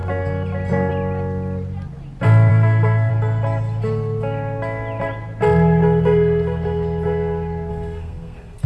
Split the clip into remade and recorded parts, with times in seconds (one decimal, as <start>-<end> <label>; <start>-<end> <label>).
0.0-2.5 recorded; 2.5-3.1 remade; 3.1-7.7 recorded; 7.7-8.7 remade